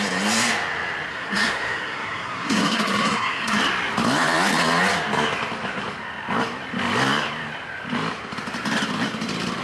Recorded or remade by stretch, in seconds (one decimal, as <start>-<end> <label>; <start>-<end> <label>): 0.0-1.1 recorded; 1.1-3.6 remade; 3.6-9.6 recorded